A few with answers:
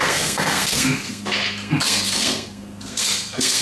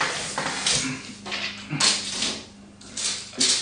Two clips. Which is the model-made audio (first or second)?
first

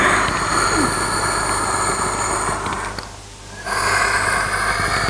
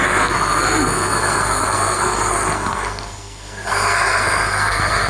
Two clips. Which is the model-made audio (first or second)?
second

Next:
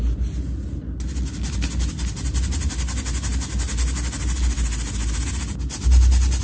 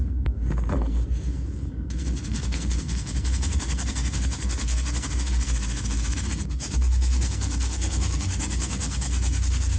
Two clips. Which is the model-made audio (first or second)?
second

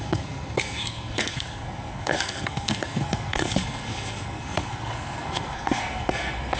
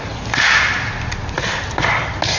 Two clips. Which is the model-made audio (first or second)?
first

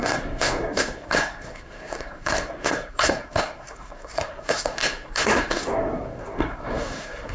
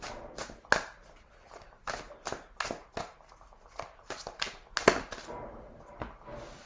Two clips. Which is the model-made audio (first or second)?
first